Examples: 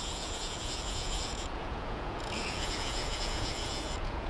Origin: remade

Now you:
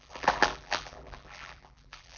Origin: remade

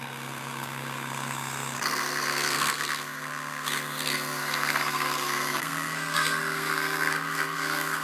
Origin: remade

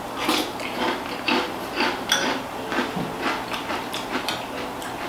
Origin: recorded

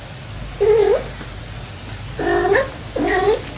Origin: recorded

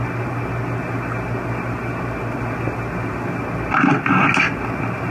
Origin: recorded